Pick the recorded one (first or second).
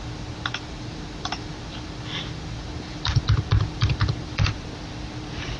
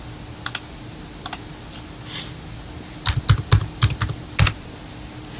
second